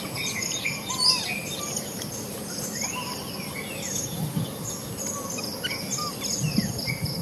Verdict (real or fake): real